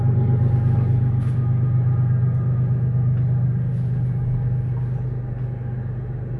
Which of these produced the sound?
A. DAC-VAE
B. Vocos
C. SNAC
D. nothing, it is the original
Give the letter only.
D